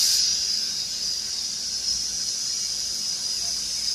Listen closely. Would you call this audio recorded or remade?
recorded